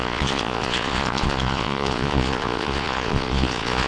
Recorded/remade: remade